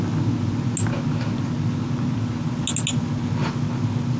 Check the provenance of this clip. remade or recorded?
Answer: recorded